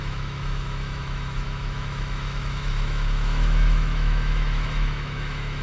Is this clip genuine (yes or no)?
no